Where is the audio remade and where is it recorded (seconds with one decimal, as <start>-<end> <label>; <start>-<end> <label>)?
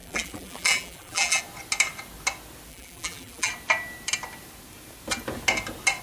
0.0-1.4 remade; 1.4-2.7 recorded; 2.7-3.5 remade; 3.5-6.0 recorded